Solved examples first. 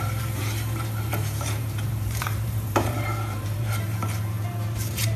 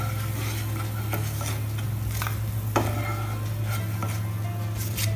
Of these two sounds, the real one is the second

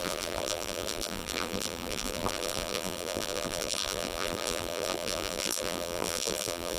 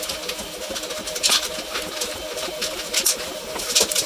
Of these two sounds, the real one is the second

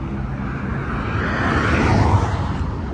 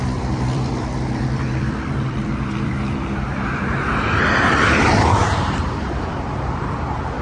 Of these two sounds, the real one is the first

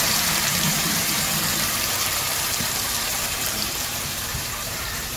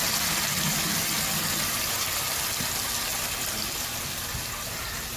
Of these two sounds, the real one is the second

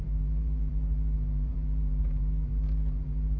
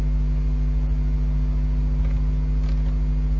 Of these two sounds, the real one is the second